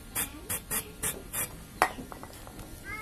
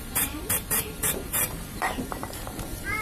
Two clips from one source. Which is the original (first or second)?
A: first